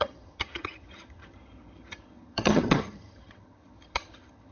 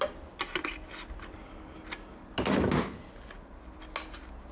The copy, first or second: first